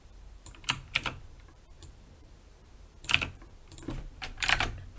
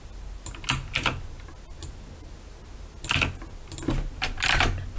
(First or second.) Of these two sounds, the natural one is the second